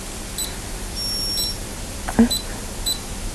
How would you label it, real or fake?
fake